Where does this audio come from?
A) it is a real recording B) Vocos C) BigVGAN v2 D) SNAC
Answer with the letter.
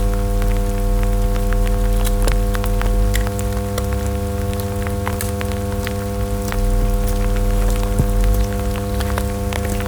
A